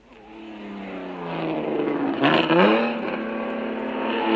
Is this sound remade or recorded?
recorded